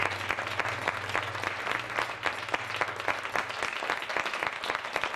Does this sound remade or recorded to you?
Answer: recorded